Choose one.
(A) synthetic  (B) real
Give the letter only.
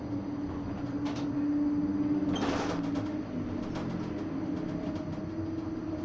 B